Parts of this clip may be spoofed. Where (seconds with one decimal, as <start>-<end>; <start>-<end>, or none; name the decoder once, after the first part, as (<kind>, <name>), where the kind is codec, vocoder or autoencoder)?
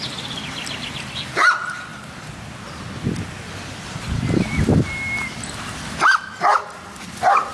none